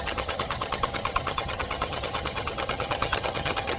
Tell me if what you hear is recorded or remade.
remade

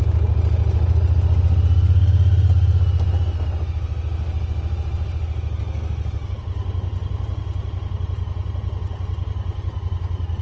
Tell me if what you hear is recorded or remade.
recorded